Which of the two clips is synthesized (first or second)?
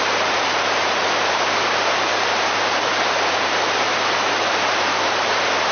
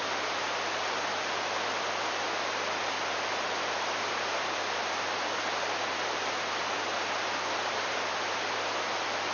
first